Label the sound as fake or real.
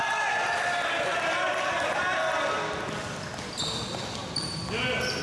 real